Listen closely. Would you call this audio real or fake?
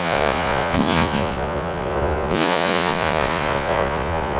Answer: fake